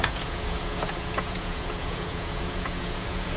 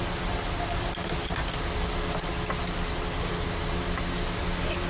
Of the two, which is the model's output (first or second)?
first